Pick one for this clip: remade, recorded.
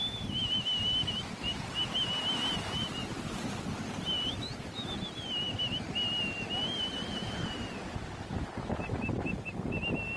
recorded